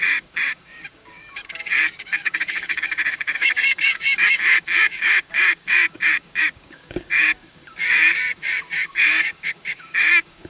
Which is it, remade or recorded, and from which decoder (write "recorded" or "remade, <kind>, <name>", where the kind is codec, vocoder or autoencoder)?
remade, codec, DAC